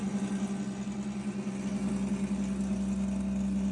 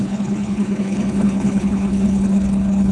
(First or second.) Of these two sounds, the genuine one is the first